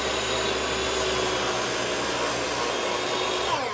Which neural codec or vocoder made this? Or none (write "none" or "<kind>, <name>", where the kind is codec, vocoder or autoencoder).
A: none